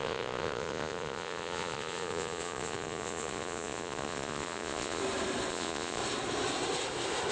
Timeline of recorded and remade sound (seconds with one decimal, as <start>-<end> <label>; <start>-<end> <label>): 0.0-5.0 remade; 5.0-5.5 recorded; 5.5-6.0 remade; 6.0-7.3 recorded